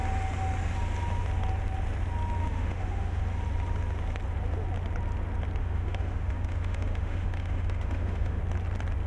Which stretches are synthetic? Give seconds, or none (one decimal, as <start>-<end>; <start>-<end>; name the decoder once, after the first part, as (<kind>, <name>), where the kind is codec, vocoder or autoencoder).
2.4-3.2 (autoencoder, DAC-VAE); 5.6-8.4